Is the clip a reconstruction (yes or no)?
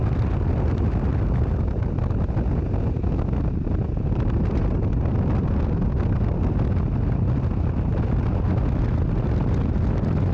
no